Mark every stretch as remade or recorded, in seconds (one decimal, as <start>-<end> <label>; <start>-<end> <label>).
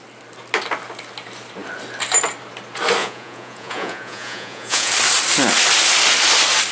0.0-3.0 recorded; 3.0-4.9 remade; 4.9-6.7 recorded